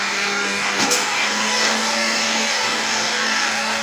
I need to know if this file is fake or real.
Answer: fake